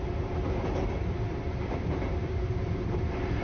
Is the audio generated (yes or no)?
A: yes